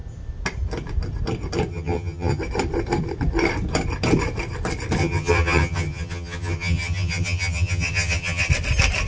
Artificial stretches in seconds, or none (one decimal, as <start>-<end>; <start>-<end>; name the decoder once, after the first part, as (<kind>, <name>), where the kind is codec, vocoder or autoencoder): 1.7-2.4 (vocoder, HiFi-GAN); 5.0-8.5